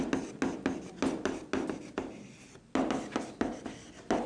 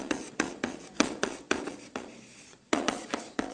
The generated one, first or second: second